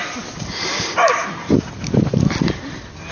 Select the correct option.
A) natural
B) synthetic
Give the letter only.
A